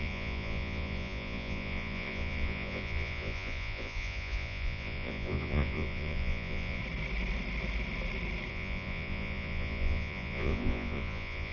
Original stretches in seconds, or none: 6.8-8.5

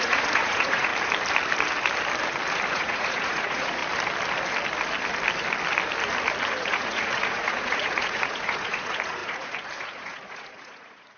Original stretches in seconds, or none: 0.9-2.7; 3.8-6.6

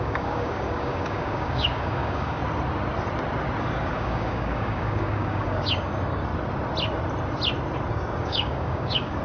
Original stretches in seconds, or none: 2.4-3.6; 6.3-7.9

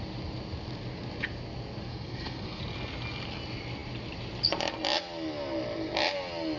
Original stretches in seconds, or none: 0.0-1.9; 2.6-6.6

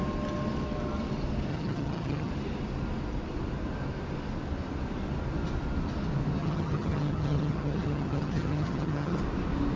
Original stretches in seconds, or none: 0.0-1.5; 2.3-6.4; 9.2-9.8